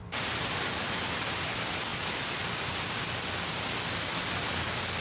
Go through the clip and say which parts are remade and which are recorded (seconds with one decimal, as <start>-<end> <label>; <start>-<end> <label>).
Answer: 0.0-5.0 recorded

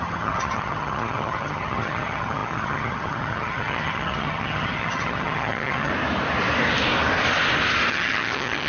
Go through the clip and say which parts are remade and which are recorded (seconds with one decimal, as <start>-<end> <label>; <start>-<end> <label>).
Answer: 0.0-5.9 remade; 5.9-7.9 recorded; 7.9-8.7 remade

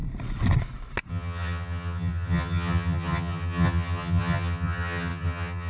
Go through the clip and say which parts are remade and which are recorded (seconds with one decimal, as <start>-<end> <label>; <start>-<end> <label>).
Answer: 0.0-1.1 recorded; 1.1-5.7 remade

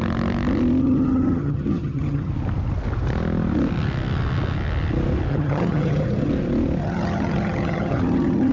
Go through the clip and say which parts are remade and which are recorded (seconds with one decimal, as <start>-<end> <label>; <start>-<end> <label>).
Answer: 0.0-0.8 recorded; 0.8-2.3 remade; 2.3-5.3 recorded; 5.3-6.3 remade; 6.3-6.8 recorded; 6.8-8.5 remade

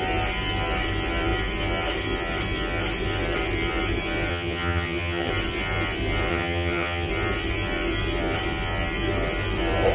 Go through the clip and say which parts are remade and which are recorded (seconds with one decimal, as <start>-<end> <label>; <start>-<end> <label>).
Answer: 0.0-4.3 recorded; 4.3-5.3 remade; 5.3-6.3 recorded; 6.3-7.1 remade; 7.1-9.9 recorded

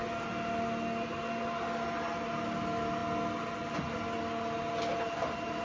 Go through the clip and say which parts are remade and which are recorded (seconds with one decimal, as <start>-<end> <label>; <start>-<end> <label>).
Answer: 0.0-5.6 recorded